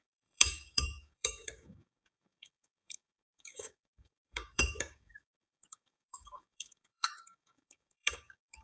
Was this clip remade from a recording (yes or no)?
yes